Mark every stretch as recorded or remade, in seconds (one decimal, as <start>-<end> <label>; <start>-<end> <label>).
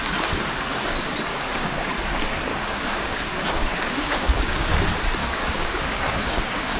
0.0-1.3 recorded; 1.3-1.9 remade; 1.9-2.5 recorded; 2.5-4.7 remade; 4.7-5.2 recorded; 5.2-6.8 remade